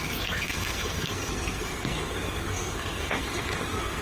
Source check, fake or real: fake